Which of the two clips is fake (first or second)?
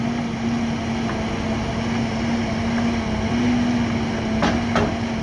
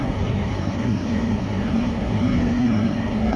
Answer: second